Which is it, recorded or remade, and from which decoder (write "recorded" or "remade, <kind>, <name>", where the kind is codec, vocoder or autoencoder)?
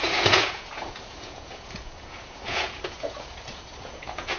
remade, vocoder, Vocos